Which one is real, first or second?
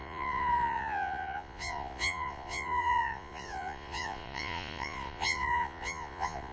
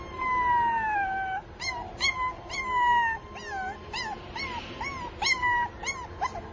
second